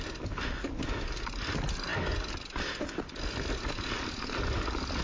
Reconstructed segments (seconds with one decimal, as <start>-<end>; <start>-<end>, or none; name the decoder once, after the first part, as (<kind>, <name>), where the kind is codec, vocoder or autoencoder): none